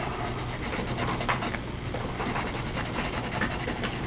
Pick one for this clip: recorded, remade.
recorded